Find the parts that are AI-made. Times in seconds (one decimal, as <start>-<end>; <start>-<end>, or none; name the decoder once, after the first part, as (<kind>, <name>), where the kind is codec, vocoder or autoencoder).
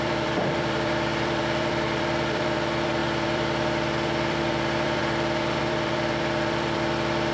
0.0-7.3 (vocoder, BigVGAN v2)